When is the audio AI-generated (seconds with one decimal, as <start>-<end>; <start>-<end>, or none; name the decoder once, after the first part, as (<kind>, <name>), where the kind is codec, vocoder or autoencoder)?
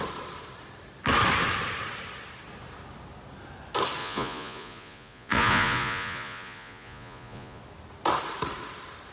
4.0-7.6 (vocoder, Vocos)